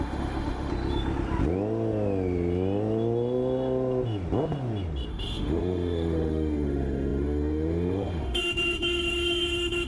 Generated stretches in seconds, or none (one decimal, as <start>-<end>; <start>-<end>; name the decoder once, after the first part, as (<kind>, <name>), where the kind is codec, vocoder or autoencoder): 0.0-0.7 (autoencoder, DAC-VAE); 5.1-9.9